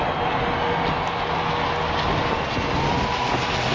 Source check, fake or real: real